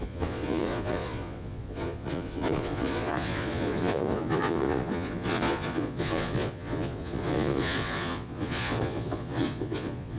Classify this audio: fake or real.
fake